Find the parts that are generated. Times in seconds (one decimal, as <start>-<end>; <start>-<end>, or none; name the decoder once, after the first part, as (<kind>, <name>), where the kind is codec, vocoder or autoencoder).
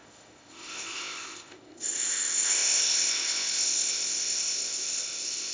0.0-5.5 (codec, ZipCodec)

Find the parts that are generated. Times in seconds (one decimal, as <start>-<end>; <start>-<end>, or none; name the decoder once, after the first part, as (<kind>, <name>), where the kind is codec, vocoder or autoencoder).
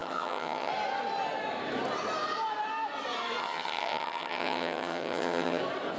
0.0-0.7 (vocoder, HiFi-GAN); 3.4-5.6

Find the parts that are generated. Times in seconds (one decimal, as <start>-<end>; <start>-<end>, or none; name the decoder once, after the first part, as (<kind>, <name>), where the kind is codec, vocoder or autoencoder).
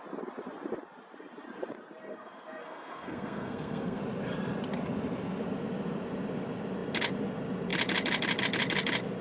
2.1-4.0 (codec, SNAC)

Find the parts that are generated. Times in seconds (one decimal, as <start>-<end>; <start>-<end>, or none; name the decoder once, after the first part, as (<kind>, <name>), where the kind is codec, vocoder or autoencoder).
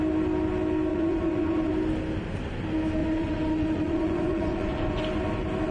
0.9-1.7 (vocoder, Vocos); 3.0-5.0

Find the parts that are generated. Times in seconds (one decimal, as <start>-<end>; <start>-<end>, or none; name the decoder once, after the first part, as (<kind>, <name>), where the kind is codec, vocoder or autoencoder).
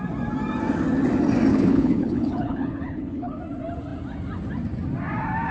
1.5-3.4 (codec, HILCodec)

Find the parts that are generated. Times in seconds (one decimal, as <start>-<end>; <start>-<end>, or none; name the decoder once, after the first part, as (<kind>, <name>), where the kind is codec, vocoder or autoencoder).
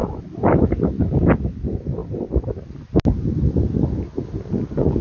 none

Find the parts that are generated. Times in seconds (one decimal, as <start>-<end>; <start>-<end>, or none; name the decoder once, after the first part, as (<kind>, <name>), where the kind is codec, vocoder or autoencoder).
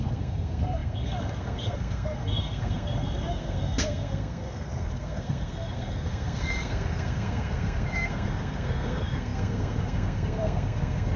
0.0-11.2 (codec, SNAC)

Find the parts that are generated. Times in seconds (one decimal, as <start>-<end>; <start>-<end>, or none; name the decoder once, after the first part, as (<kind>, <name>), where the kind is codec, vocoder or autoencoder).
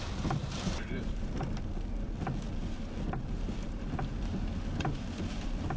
0.4-1.4 (vocoder, BigVGAN v2)